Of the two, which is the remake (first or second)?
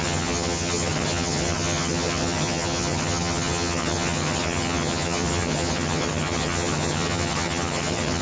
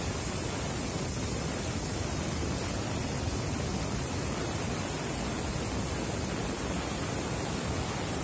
first